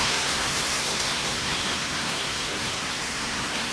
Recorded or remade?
remade